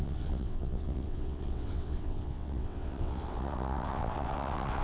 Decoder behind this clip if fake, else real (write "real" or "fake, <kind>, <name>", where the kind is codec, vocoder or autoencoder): fake, vocoder, WaveNeXt